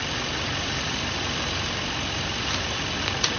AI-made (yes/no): no